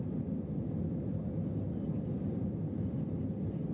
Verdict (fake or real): real